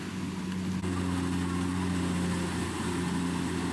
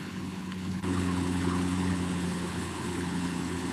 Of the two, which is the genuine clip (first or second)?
first